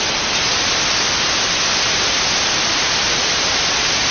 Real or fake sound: real